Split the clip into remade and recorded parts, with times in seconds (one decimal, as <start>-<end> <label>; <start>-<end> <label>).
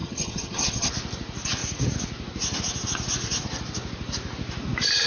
0.0-0.9 remade; 0.9-5.1 recorded